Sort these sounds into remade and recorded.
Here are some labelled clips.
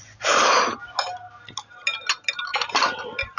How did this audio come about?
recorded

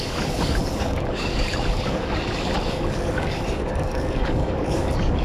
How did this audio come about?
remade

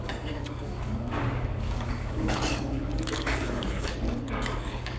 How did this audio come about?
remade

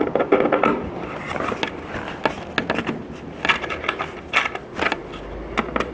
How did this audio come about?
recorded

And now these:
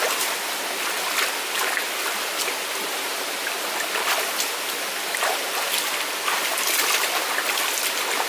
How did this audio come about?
recorded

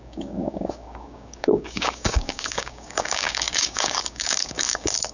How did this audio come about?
remade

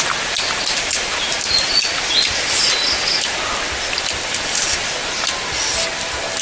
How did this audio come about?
recorded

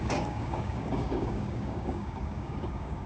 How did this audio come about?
remade